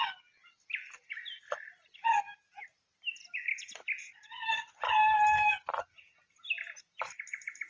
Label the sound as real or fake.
real